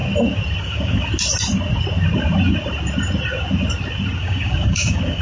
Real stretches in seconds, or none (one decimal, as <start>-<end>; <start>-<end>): 0.0-0.6; 1.1-4.2